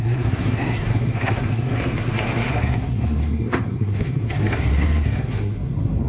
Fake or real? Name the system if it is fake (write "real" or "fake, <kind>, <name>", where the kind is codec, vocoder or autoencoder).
fake, codec, SNAC